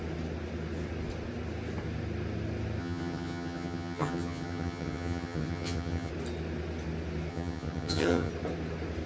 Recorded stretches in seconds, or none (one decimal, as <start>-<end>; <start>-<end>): 0.0-2.8; 6.1-7.3; 8.3-9.1